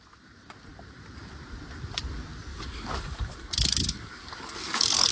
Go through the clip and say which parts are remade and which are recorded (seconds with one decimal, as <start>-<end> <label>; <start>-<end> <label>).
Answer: 0.0-2.5 recorded; 2.5-5.1 remade